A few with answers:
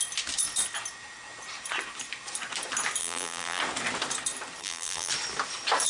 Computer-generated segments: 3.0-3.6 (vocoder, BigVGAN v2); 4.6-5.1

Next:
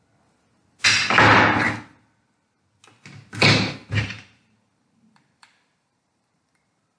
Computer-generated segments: 3.8-7.0 (vocoder, BigVGAN v2)

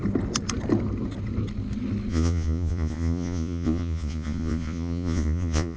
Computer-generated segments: 2.1-5.8 (vocoder, Vocos)

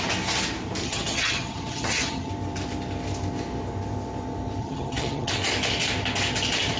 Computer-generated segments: 0.8-2.3 (vocoder, HiFi-GAN); 4.6-5.3

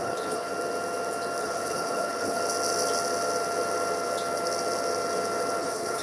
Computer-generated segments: 0.0-0.5 (codec, HILCodec); 1.4-2.4; 5.6-6.0